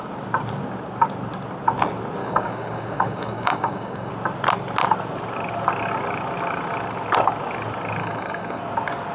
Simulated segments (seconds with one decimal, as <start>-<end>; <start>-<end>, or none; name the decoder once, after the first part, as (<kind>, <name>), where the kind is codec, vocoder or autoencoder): 2.2-4.1 (codec, DAC); 8.0-8.6